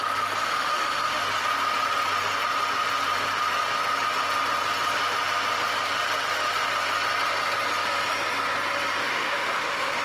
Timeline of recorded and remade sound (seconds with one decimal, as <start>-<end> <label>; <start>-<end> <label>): 0.0-0.4 recorded; 0.4-1.2 remade; 1.2-9.0 recorded; 9.0-10.0 remade